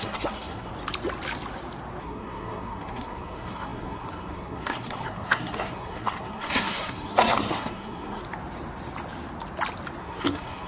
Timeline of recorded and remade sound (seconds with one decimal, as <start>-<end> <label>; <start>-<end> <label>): 0.0-0.7 remade; 0.7-2.0 recorded; 2.0-8.2 remade; 8.2-10.0 recorded; 10.0-10.7 remade